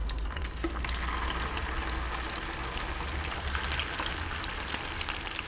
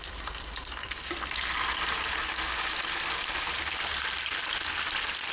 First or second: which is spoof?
second